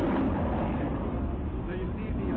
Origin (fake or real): real